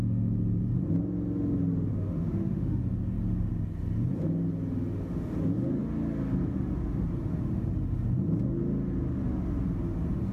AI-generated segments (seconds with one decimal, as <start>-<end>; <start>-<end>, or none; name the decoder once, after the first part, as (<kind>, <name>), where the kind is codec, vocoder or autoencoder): 1.9-2.8 (autoencoder, DAC-VAE)